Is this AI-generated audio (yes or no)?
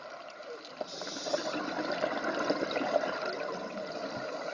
no